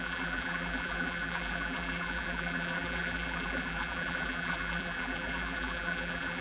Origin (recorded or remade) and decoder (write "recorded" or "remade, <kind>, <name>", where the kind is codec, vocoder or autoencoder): remade, vocoder, BigVGAN v2